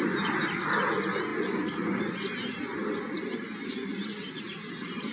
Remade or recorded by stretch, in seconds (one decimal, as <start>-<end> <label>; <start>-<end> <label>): 0.0-5.1 recorded